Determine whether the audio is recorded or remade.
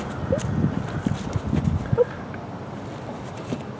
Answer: recorded